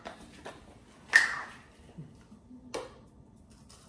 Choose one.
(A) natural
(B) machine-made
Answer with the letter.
A